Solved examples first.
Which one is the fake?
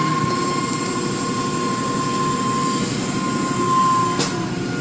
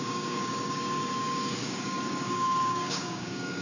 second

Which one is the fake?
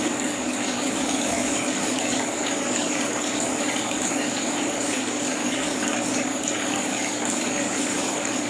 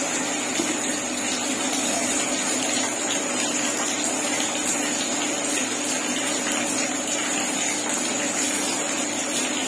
first